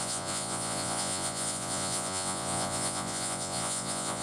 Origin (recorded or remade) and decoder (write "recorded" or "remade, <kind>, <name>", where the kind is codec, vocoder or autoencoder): remade, vocoder, Vocos